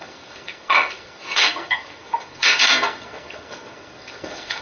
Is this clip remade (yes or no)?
yes